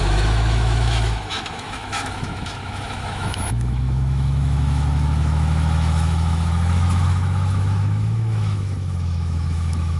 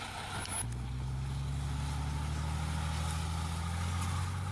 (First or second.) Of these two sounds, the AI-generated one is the first